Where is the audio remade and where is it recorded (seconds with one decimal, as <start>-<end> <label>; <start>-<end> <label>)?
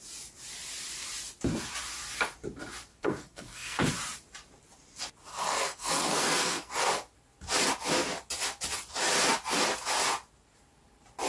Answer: 0.0-2.9 recorded; 2.9-3.9 remade; 3.9-5.3 recorded; 5.3-6.9 remade; 6.9-11.3 recorded